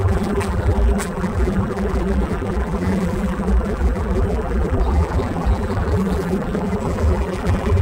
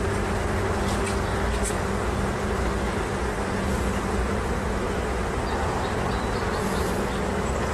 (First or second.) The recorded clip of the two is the second